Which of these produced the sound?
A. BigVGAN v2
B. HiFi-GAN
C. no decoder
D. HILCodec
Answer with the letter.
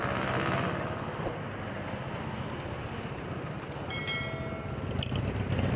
C